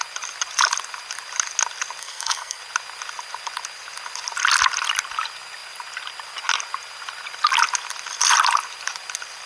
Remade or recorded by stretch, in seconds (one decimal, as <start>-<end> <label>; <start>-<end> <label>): 0.0-2.0 recorded; 2.0-2.6 remade; 2.6-9.5 recorded